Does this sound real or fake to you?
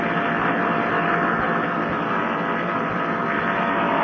real